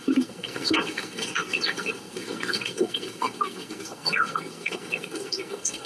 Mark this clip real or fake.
fake